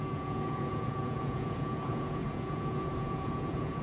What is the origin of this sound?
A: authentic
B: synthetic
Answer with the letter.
B